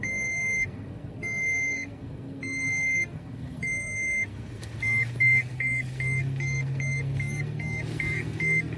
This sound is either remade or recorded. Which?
remade